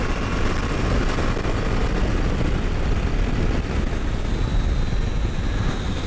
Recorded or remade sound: recorded